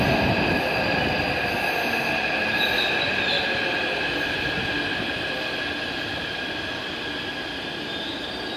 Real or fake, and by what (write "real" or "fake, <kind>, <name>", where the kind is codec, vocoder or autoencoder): real